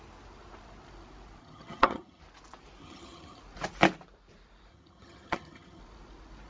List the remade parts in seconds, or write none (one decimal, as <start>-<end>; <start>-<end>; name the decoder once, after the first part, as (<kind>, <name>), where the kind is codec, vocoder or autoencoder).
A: 1.4-2.2 (vocoder, HiFi-GAN); 2.8-3.4; 4.7-5.8